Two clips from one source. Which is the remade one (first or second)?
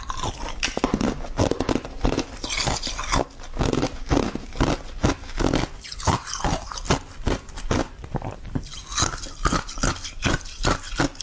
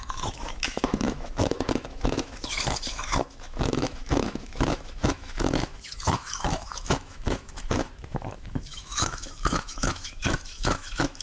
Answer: second